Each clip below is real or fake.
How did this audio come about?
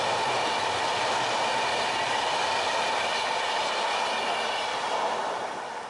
real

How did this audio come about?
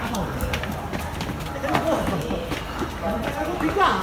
real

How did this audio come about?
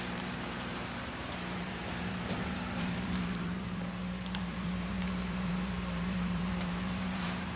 fake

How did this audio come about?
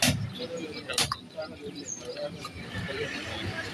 real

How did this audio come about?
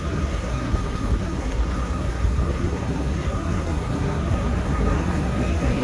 fake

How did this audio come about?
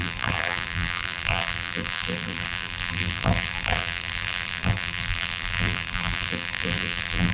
fake